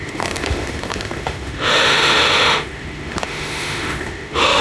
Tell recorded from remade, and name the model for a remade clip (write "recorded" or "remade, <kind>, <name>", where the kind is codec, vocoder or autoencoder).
remade, autoencoder, DAC-VAE